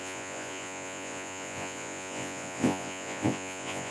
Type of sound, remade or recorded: remade